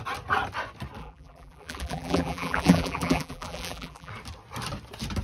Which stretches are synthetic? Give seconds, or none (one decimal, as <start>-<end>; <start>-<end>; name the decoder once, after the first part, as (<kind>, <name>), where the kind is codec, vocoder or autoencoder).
1.0-4.1 (vocoder, BigVGAN v2)